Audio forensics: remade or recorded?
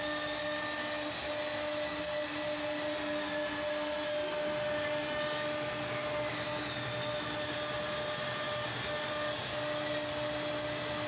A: recorded